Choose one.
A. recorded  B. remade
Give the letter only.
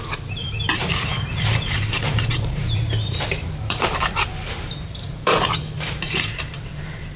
B